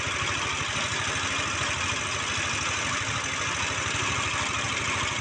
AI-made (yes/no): no